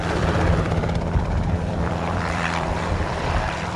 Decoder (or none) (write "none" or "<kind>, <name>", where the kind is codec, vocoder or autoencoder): vocoder, BigVGAN v2